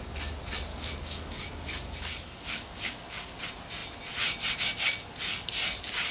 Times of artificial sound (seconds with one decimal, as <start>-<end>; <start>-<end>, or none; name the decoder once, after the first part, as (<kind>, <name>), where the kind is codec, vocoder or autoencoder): 0.7-3.4 (codec, DAC)